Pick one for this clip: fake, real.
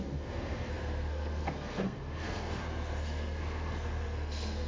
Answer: fake